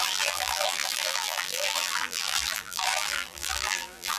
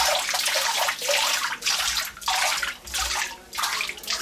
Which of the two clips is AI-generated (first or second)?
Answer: first